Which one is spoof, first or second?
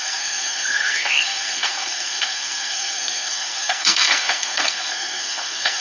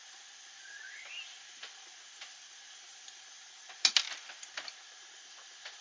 first